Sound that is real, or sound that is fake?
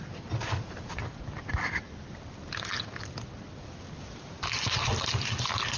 real